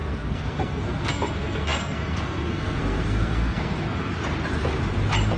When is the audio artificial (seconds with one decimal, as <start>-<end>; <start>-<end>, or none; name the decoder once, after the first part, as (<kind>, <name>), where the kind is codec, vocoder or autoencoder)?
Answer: 0.0-4.1 (codec, SNAC)